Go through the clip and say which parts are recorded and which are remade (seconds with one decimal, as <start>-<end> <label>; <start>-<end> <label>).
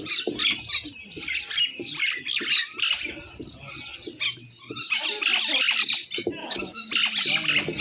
0.0-6.4 recorded; 6.4-6.9 remade; 6.9-7.8 recorded